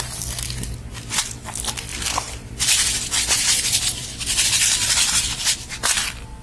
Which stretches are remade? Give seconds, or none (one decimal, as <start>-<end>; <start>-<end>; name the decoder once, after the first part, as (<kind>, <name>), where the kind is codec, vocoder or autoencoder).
1.9-5.7 (vocoder, BigVGAN v2)